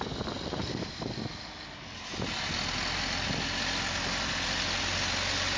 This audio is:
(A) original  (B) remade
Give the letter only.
A